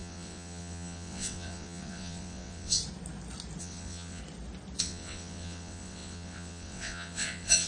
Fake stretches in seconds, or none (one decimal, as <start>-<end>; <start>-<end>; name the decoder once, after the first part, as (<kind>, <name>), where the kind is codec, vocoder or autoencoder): 0.0-2.8 (vocoder, WaveNeXt); 3.6-4.2; 4.8-7.7